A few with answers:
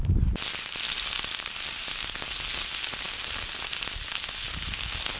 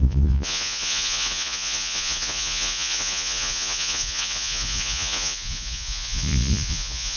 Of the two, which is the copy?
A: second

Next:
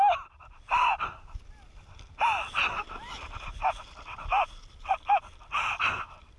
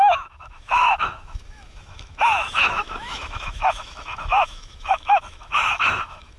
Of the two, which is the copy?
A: second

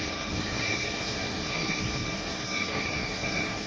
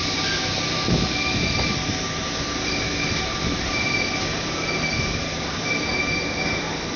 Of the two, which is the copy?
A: first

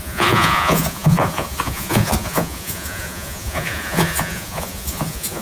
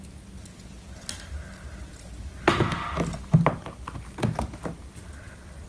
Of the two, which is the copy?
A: first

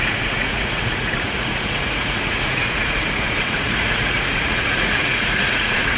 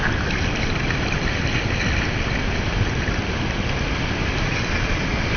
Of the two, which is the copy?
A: first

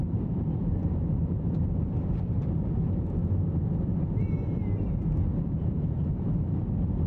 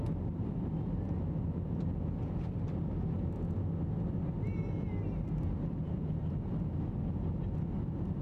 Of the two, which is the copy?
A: first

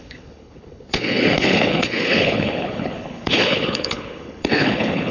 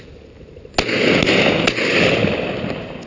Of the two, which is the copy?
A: first